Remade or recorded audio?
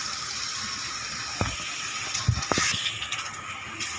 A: recorded